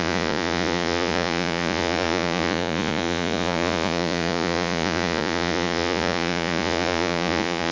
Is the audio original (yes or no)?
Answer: no